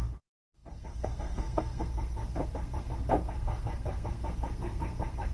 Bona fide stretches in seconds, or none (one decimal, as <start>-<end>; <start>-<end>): none